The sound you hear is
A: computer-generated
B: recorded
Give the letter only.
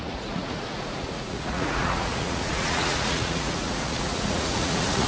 A